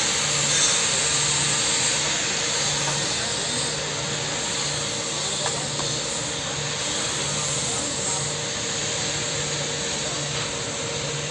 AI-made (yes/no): no